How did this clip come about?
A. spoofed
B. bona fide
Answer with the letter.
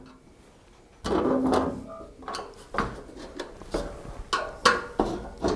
B